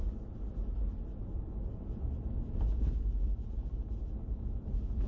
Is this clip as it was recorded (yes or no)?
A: yes